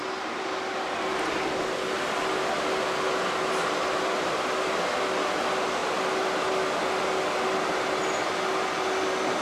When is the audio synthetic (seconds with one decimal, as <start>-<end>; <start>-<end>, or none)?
none